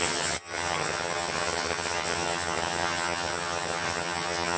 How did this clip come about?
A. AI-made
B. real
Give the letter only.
A